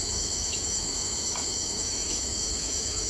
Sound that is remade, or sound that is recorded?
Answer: remade